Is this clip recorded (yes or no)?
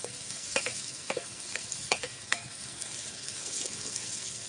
no